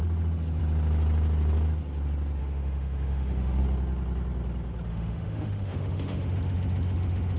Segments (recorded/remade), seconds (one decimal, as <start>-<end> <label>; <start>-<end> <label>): 0.0-2.4 recorded; 2.4-3.6 remade; 3.6-4.9 recorded; 4.9-7.4 remade